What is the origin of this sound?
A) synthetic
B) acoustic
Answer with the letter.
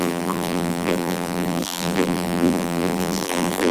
A